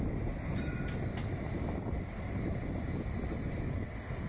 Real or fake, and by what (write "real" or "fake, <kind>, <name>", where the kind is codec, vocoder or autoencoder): real